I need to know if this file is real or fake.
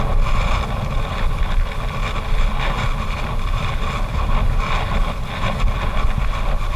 real